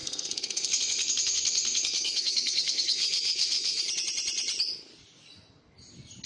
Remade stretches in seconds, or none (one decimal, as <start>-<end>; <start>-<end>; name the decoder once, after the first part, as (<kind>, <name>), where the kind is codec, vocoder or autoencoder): 0.0-3.8 (codec, SNAC)